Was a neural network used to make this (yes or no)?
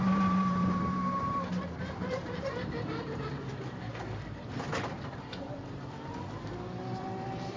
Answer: yes